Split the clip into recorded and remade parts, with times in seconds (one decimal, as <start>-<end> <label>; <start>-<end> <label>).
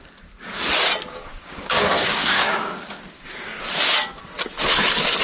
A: 0.0-1.3 recorded; 1.3-3.6 remade; 3.6-5.2 recorded